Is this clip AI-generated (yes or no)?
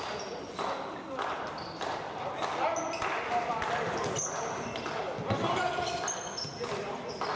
no